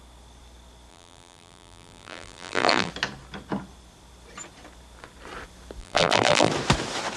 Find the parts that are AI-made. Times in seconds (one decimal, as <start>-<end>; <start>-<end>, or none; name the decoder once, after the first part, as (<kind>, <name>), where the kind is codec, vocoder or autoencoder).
0.9-2.9 (vocoder, BigVGAN v2); 5.8-6.5